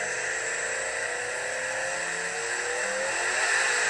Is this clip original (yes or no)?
yes